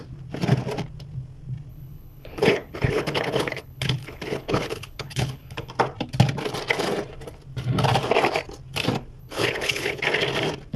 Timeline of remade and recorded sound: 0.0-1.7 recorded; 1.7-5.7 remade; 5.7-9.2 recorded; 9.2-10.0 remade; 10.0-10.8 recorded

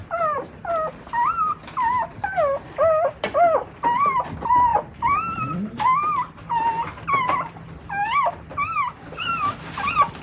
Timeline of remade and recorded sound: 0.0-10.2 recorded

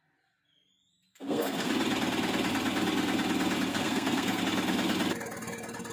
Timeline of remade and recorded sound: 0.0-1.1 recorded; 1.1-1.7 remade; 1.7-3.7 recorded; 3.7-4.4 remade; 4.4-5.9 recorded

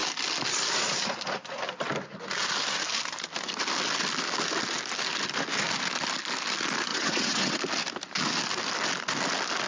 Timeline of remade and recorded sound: 0.0-6.9 recorded; 6.9-7.6 remade; 7.6-9.7 recorded

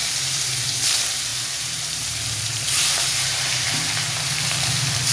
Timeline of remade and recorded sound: 0.0-5.1 remade